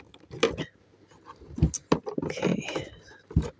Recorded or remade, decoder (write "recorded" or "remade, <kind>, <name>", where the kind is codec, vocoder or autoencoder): recorded